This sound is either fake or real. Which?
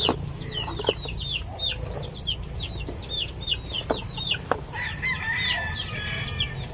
real